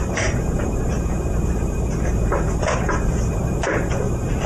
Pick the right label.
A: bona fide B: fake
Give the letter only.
B